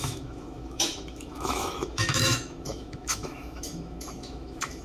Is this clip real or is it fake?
fake